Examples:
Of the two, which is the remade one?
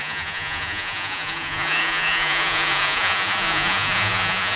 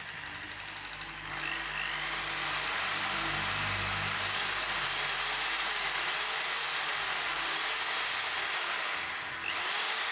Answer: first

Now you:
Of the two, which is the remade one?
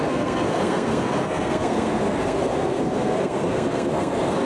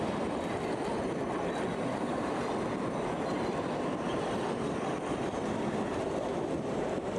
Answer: first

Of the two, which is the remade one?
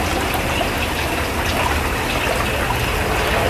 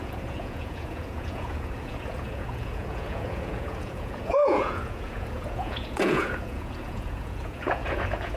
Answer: second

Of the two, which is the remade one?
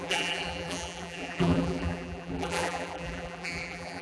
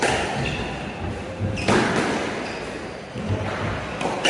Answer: first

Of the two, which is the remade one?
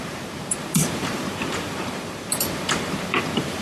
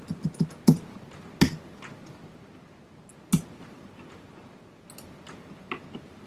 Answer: first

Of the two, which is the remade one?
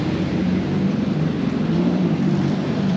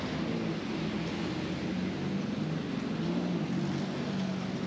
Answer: first